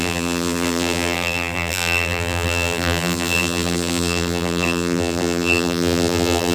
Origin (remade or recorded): remade